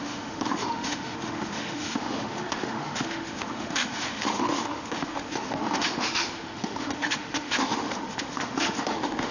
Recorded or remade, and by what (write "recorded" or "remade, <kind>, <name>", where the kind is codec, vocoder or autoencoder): remade, autoencoder, DAC-VAE